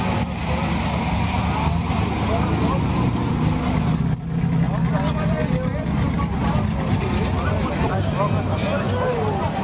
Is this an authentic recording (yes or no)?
yes